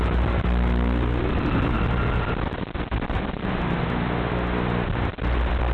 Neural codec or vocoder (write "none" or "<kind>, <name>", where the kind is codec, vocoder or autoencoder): none